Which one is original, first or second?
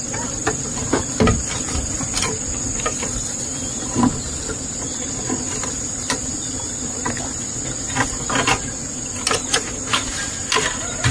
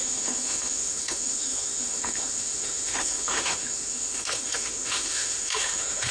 first